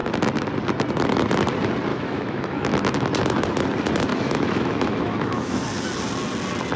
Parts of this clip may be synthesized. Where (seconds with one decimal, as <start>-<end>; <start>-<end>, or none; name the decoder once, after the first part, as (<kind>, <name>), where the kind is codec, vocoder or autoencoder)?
1.9-2.7 (autoencoder, DAC-VAE); 4.1-5.6

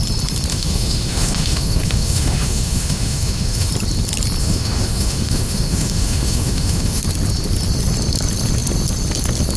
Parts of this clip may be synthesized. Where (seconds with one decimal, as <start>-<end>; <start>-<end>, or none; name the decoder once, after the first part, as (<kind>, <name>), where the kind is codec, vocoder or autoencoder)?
0.5-3.7 (autoencoder, DAC-VAE); 4.4-7.0

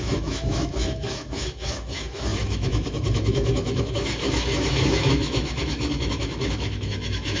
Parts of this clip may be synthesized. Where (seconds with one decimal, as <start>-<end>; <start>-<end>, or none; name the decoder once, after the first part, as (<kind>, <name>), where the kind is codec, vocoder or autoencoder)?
0.0-7.4 (autoencoder, DAC-VAE)

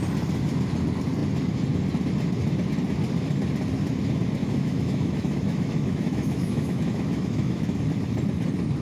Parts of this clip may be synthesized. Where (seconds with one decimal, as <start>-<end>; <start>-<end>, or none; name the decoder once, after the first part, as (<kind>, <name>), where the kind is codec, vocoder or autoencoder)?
4.4-7.8 (autoencoder, DAC-VAE)

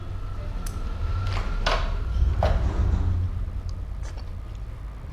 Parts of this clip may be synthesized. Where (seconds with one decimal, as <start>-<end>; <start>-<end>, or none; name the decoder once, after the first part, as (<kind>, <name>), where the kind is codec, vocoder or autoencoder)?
none

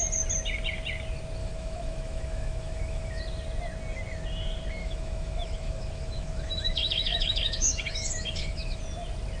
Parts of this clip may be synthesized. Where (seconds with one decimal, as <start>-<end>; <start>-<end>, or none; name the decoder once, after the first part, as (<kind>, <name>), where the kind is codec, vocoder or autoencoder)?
1.4-3.2 (autoencoder, DAC-VAE); 4.8-8.8

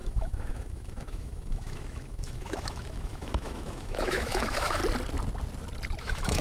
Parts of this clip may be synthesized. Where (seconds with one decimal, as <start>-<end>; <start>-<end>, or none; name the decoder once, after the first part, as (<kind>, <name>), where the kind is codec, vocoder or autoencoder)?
0.0-4.8 (autoencoder, DAC-VAE); 6.0-6.4